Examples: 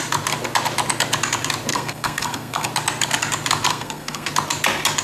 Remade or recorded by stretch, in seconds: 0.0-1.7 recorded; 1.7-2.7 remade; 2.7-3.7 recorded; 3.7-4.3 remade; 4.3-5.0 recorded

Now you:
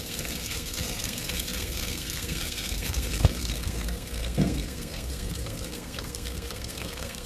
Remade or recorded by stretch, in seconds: 0.0-7.3 remade

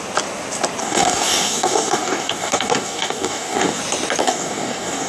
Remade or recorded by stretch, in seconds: 0.0-0.8 recorded; 0.8-3.8 remade; 3.8-4.2 recorded; 4.2-5.1 remade

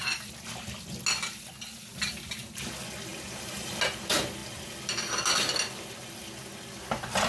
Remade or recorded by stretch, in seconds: 0.0-3.1 recorded; 3.1-3.7 remade; 3.7-7.3 recorded

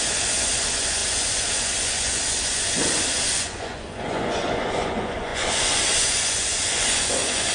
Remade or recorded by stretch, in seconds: 0.0-7.5 remade